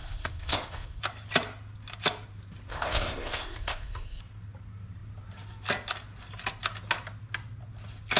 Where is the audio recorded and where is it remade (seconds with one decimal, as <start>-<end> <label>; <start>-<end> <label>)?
0.0-1.0 remade; 1.0-2.7 recorded; 2.7-4.2 remade; 4.2-8.2 recorded

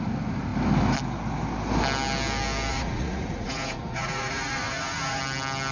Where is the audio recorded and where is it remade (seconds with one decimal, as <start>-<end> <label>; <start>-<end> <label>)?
0.0-2.7 recorded; 2.7-5.2 remade; 5.2-5.7 recorded

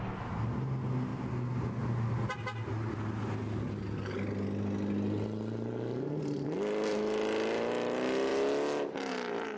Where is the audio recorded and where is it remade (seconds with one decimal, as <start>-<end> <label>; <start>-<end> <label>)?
0.0-9.6 recorded

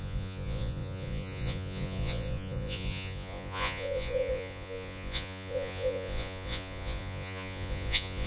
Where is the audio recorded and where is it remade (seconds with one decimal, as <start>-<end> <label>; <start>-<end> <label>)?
0.0-8.3 remade

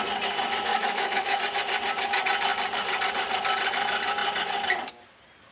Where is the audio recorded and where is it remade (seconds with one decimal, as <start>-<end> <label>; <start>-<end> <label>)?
0.0-0.7 recorded; 0.7-1.4 remade; 1.4-5.5 recorded

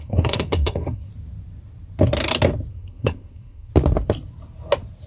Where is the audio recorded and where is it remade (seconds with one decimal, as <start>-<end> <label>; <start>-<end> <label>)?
0.0-1.1 remade; 1.1-2.7 recorded; 2.7-3.7 remade; 3.7-5.1 recorded